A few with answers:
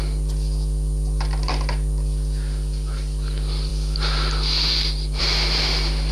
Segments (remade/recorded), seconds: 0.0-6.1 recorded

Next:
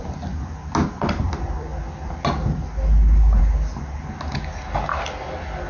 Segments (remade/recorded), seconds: 0.0-5.7 recorded

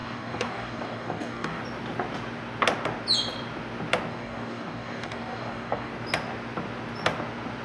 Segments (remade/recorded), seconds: 0.0-1.6 remade; 1.6-4.1 recorded; 4.1-5.9 remade; 5.9-7.6 recorded

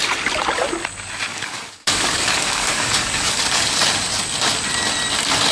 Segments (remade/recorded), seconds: 0.0-1.3 recorded; 1.3-3.4 remade; 3.4-5.5 recorded

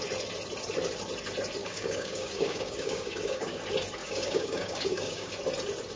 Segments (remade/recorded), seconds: 0.0-1.6 recorded; 1.6-3.6 remade; 3.6-4.0 recorded; 4.0-5.3 remade; 5.3-6.0 recorded

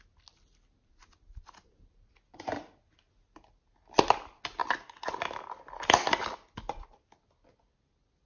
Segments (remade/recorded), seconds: 0.0-8.3 recorded

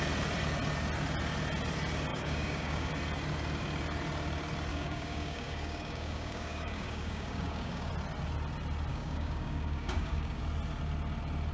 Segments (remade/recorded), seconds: 0.0-2.1 recorded; 2.1-2.9 remade; 2.9-4.7 recorded; 4.7-7.9 remade; 7.9-8.9 recorded; 8.9-10.4 remade; 10.4-11.5 recorded